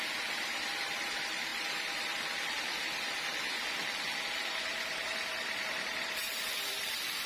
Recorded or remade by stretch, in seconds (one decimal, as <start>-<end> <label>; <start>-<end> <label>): 0.0-7.3 remade